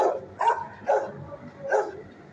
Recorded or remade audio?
remade